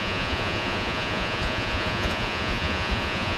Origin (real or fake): fake